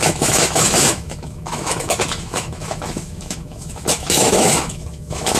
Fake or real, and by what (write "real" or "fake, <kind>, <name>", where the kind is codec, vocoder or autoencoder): fake, autoencoder, DAC-VAE